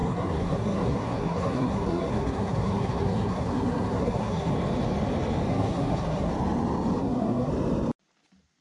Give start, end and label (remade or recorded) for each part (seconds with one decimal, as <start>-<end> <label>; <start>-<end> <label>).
0.0-4.5 remade; 4.5-5.5 recorded; 5.5-6.3 remade; 6.3-7.0 recorded; 7.0-7.5 remade; 7.5-8.6 recorded